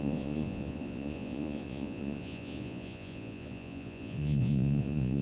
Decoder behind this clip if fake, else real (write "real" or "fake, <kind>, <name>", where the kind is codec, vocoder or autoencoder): fake, vocoder, Vocos